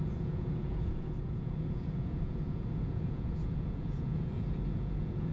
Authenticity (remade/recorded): remade